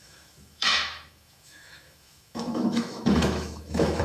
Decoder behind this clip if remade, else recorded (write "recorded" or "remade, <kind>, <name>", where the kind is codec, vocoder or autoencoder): remade, autoencoder, DAC-VAE